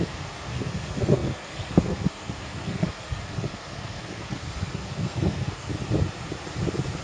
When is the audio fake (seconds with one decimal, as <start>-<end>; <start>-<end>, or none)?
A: 0.0-5.7